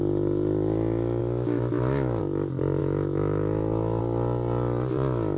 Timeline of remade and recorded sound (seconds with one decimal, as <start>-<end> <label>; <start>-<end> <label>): 0.0-1.2 recorded; 1.2-2.2 remade; 2.2-2.8 recorded; 2.8-4.0 remade; 4.0-5.4 recorded